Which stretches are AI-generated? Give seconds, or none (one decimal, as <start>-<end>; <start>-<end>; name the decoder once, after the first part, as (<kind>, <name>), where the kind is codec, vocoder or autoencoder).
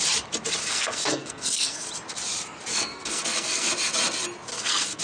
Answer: 0.6-1.9 (codec, SNAC); 2.7-3.7; 4.5-5.0